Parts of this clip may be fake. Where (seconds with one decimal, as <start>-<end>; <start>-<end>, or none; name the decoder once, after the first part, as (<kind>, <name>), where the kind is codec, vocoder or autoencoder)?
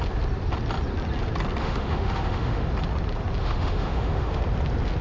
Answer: 1.6-2.7 (autoencoder, DAC-VAE); 3.4-4.4